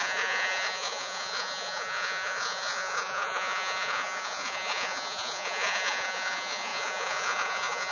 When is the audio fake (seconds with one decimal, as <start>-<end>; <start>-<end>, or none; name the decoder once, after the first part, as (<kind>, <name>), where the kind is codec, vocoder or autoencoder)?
0.0-7.9 (vocoder, Vocos)